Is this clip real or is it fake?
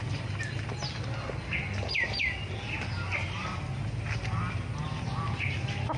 real